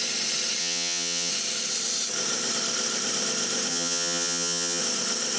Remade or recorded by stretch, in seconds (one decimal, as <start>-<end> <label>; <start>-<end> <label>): 0.0-0.6 recorded; 0.6-1.3 remade; 1.3-3.7 recorded; 3.7-4.8 remade; 4.8-5.4 recorded